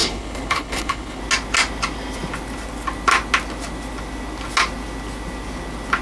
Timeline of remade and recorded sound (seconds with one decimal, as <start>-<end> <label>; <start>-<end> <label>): 0.0-1.2 remade; 1.2-6.0 recorded